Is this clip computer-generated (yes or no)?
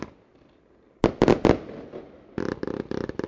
no